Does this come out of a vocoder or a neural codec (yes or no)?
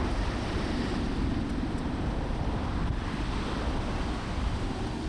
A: no